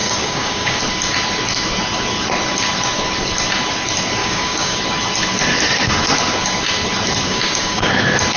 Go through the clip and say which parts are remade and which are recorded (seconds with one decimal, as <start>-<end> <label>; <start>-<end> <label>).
0.0-0.8 remade; 0.8-4.2 recorded; 4.2-4.8 remade; 4.8-7.3 recorded; 7.3-7.9 remade; 7.9-8.4 recorded